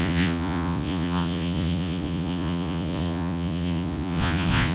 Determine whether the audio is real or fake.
fake